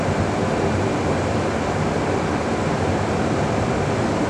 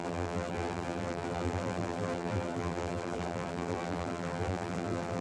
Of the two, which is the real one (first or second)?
first